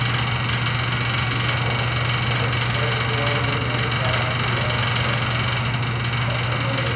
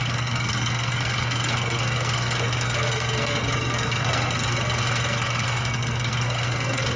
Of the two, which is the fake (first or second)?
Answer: second